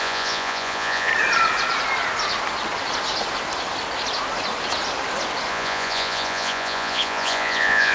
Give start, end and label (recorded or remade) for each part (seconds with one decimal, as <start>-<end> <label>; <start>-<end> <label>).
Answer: 0.0-1.1 remade; 1.1-5.5 recorded; 5.5-7.9 remade